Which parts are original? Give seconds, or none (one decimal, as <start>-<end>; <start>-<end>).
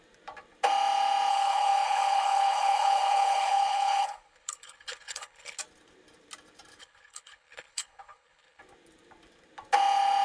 0.0-1.3; 5.6-6.8; 8.6-10.2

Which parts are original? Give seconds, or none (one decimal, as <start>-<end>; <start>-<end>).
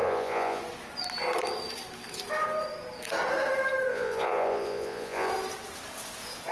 0.6-3.9; 5.3-6.5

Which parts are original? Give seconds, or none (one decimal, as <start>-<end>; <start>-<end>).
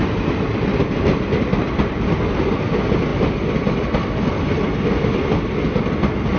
0.0-6.4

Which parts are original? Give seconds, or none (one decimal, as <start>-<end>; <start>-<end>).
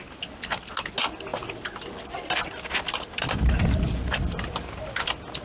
0.0-1.3; 4.5-5.4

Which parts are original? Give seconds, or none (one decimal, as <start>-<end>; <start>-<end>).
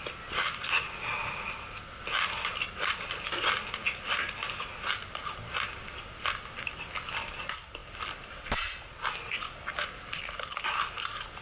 0.0-11.4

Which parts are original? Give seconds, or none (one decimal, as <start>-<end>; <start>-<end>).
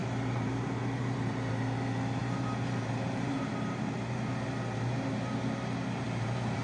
1.5-2.2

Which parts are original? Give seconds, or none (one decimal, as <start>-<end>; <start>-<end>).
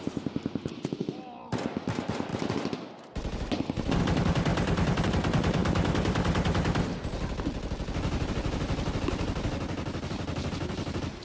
0.0-11.2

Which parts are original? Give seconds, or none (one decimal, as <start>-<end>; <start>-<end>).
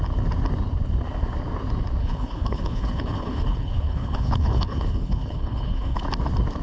0.0-2.0; 6.0-6.6